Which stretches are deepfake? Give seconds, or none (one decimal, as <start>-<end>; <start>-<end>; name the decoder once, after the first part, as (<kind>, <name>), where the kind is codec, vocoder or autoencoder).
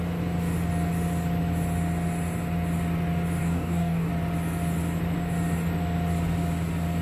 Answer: 3.4-4.1 (codec, DAC)